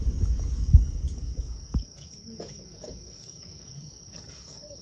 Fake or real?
fake